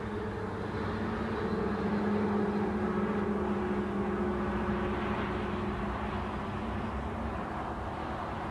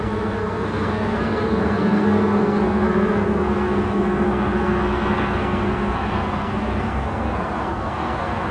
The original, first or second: first